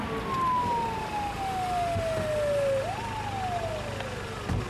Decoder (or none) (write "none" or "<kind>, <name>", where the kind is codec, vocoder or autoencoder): none